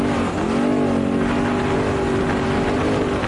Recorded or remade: recorded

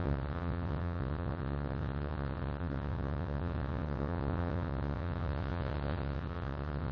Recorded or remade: remade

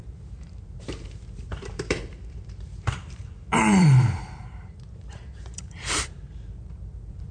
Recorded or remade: remade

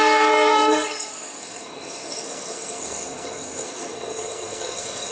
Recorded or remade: remade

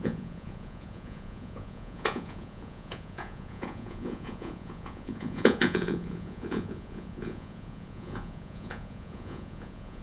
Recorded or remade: remade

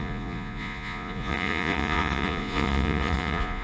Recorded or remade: remade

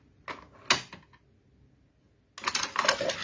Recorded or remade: recorded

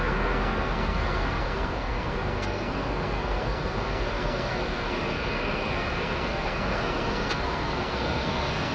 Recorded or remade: remade